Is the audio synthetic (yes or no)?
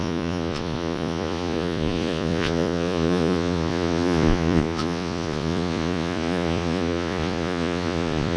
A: yes